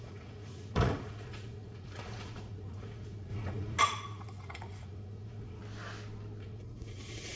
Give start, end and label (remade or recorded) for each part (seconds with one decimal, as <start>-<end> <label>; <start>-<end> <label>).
0.0-5.6 remade; 5.6-6.4 recorded; 6.4-7.4 remade